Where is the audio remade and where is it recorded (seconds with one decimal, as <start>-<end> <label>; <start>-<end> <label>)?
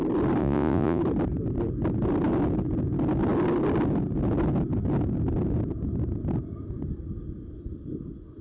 0.0-0.4 recorded; 0.4-1.0 remade; 1.0-8.4 recorded